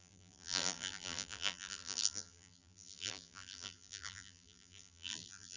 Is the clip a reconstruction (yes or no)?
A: yes